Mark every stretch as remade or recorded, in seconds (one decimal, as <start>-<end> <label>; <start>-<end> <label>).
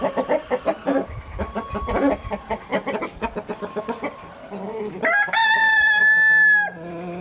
0.0-7.2 recorded